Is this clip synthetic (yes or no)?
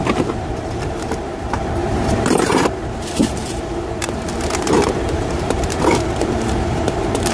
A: yes